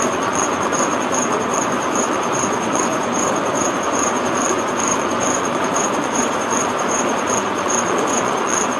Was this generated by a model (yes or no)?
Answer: yes